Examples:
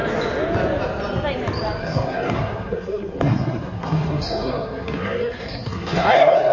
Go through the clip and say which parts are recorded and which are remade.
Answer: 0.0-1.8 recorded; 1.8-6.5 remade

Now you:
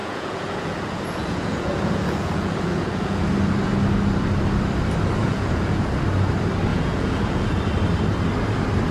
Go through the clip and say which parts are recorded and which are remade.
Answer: 0.0-3.2 remade; 3.2-5.2 recorded; 5.2-5.8 remade; 5.8-6.7 recorded; 6.7-7.6 remade; 7.6-8.9 recorded

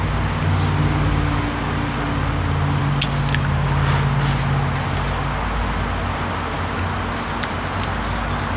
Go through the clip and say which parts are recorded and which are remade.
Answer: 0.0-8.6 recorded

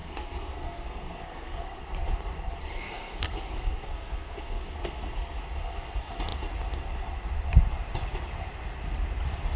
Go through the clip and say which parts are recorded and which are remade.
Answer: 0.0-1.9 remade; 1.9-2.6 recorded; 2.6-5.4 remade; 5.4-9.6 recorded

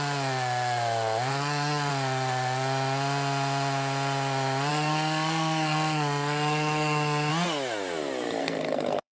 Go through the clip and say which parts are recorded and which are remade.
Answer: 0.0-1.3 recorded; 1.3-1.9 remade; 1.9-4.7 recorded; 4.7-7.3 remade; 7.3-8.4 recorded; 8.4-9.2 remade